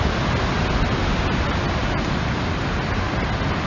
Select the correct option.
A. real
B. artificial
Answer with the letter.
A